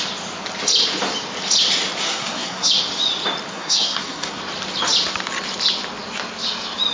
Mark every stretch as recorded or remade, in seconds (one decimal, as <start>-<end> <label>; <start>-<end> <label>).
0.0-2.0 recorded; 2.0-2.7 remade; 2.7-3.5 recorded; 3.5-4.4 remade; 4.4-6.9 recorded